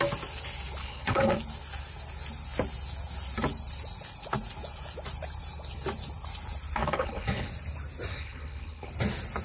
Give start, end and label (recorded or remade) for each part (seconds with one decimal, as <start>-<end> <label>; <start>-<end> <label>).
0.0-0.8 recorded; 0.8-1.3 remade; 1.3-6.8 recorded; 6.8-7.5 remade; 7.5-8.1 recorded; 8.1-8.9 remade; 8.9-9.4 recorded